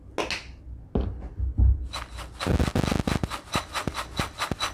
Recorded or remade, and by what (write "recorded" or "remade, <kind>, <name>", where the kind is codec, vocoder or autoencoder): recorded